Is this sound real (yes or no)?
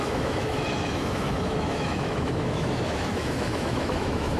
no